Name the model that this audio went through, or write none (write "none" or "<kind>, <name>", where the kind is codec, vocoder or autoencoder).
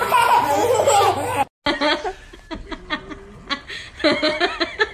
none